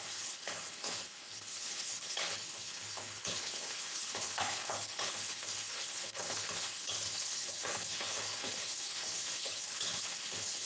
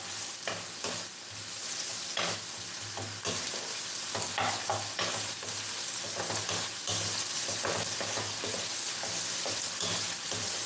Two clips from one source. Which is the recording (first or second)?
second